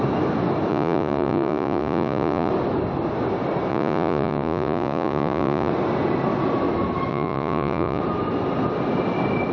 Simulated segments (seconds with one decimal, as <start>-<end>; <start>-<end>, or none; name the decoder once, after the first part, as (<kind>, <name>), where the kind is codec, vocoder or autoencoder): 0.7-2.5 (vocoder, Vocos); 3.7-5.7; 7.1-8.0